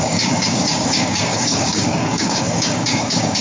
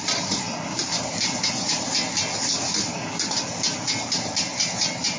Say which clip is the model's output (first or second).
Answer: first